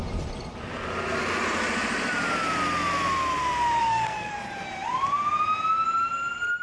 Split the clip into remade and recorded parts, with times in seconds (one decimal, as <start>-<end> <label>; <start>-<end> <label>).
0.0-3.8 recorded; 3.8-4.3 remade; 4.3-6.6 recorded